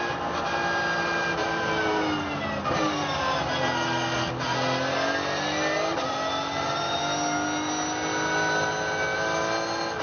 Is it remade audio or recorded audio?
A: recorded